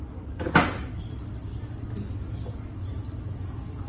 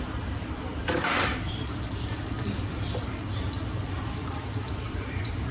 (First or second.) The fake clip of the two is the second